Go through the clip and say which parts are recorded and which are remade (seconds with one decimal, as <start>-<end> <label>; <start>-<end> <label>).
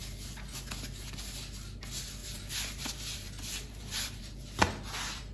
0.0-2.2 recorded; 2.2-4.2 remade; 4.2-5.3 recorded